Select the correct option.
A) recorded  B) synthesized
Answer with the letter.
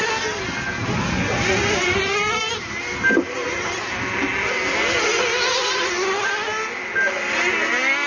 A